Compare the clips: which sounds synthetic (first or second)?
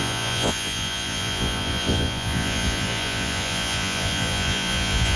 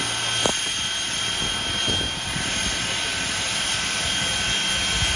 first